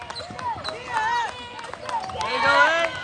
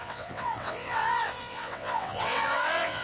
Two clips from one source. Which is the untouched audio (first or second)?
first